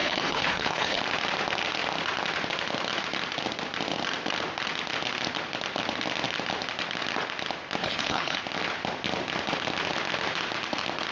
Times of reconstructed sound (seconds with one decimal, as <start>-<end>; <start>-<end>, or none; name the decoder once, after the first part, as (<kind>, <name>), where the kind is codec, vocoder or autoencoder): 0.0-1.0 (codec, HILCodec); 7.8-8.4